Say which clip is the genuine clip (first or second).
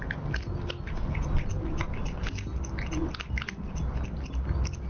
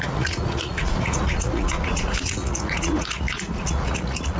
first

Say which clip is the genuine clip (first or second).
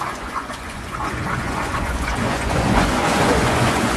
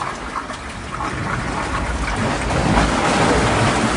second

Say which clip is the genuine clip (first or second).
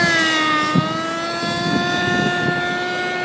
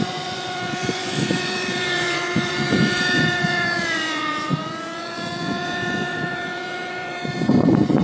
first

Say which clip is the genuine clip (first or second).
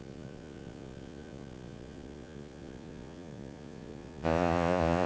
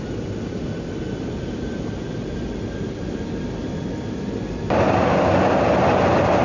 second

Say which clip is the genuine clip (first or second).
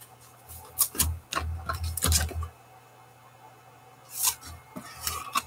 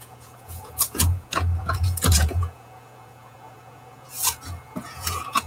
first